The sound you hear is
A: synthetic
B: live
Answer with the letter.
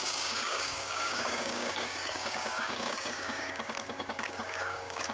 A